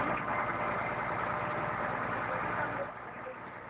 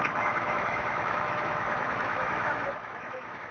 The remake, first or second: second